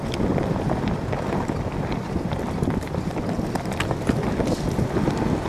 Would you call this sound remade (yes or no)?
no